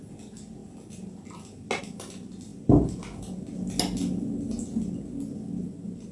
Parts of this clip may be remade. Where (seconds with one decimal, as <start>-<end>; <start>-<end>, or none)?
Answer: none